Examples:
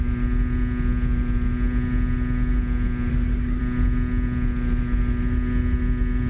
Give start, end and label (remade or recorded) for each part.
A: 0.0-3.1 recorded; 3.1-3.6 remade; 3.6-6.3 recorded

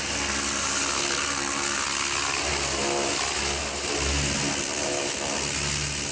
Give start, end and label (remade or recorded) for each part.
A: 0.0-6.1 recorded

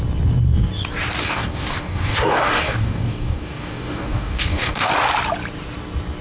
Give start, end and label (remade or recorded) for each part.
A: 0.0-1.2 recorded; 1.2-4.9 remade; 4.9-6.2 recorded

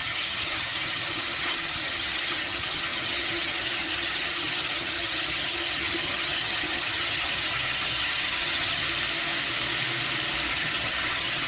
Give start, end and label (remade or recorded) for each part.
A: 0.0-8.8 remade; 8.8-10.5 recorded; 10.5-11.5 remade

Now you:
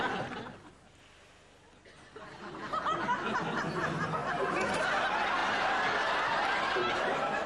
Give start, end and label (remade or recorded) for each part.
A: 0.0-7.5 recorded